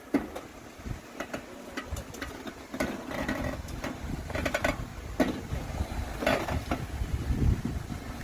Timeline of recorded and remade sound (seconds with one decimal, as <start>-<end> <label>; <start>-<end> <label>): 0.0-0.5 remade; 0.5-1.9 recorded; 1.9-4.9 remade; 4.9-6.2 recorded; 6.2-8.2 remade